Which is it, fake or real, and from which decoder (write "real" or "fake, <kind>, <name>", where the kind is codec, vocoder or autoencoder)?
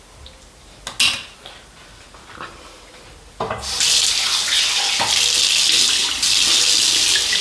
real